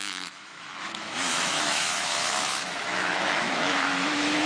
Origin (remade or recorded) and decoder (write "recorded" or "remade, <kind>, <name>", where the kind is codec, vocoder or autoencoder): remade, autoencoder, DAC-VAE